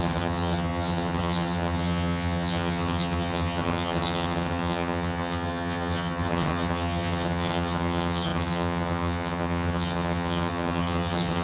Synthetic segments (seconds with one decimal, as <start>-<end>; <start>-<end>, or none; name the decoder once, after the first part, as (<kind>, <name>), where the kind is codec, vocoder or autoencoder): 0.0-11.4 (vocoder, HiFi-GAN)